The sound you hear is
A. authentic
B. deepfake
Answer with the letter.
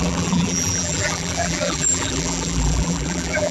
B